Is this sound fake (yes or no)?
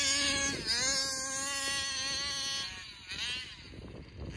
no